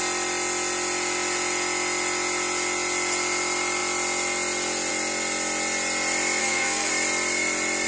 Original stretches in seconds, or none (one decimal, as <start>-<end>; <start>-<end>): 0.0-6.4; 6.9-7.9